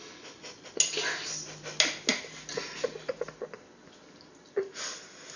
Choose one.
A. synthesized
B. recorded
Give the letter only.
B